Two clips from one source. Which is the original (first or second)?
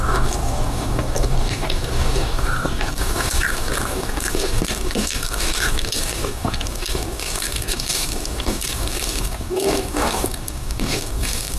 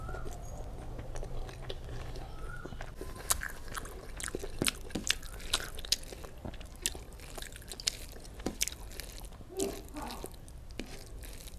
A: second